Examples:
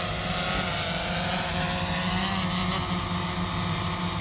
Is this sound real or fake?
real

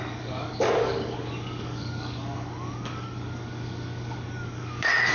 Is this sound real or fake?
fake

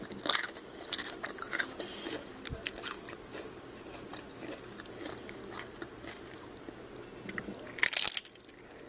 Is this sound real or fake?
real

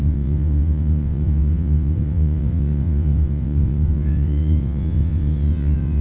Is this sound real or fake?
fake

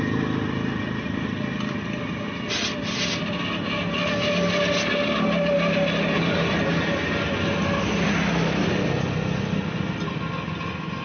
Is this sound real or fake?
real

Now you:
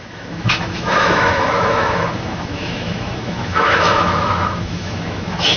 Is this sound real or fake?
fake